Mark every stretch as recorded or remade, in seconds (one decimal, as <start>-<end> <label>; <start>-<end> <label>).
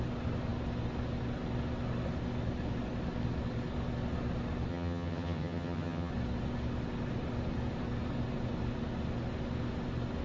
0.0-4.7 recorded; 4.7-6.1 remade; 6.1-10.2 recorded